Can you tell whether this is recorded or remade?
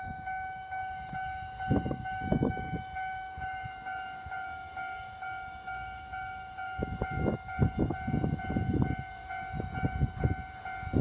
remade